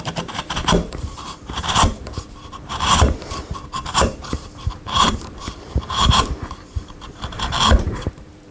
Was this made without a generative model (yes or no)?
no